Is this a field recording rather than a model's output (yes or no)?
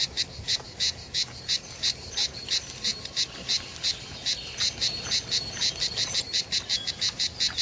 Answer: yes